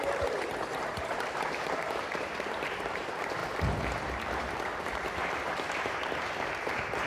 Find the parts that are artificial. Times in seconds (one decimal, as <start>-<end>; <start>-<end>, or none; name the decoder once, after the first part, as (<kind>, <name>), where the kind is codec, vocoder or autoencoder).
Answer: 0.0-3.4 (vocoder, BigVGAN v2); 4.8-7.1